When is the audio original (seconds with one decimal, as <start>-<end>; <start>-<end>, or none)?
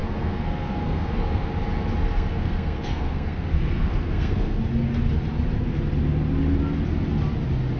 1.5-2.0; 4.6-7.8